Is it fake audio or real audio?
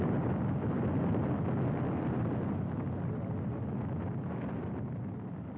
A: real